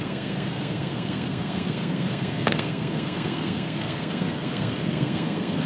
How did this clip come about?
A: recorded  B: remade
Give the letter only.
B